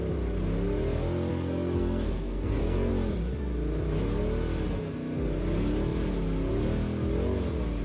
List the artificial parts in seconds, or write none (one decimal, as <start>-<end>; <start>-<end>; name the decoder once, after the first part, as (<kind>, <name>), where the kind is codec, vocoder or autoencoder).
1.3-2.9 (codec, SNAC)